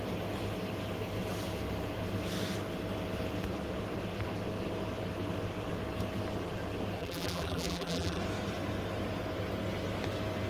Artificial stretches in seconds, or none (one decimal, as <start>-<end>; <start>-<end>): 7.0-8.2